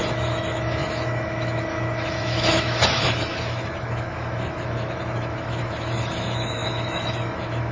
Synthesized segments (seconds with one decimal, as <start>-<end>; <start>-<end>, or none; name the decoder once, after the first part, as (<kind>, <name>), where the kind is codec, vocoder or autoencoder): 0.0-7.7 (autoencoder, DAC-VAE)